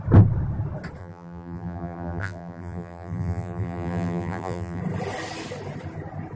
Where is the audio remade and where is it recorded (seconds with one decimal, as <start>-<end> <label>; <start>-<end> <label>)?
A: 0.0-1.0 recorded; 1.0-4.8 remade; 4.8-6.4 recorded